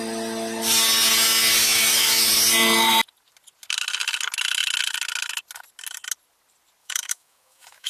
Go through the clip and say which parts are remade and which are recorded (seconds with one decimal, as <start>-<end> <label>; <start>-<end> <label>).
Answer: 0.0-1.6 recorded; 1.6-2.3 remade; 2.3-6.8 recorded; 6.8-7.9 remade